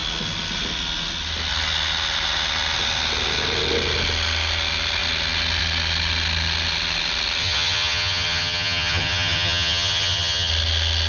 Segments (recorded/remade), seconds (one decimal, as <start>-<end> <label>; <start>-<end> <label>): 0.0-7.4 recorded; 7.4-10.5 remade; 10.5-11.1 recorded